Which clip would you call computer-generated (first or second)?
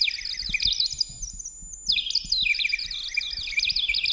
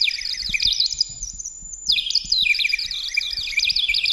second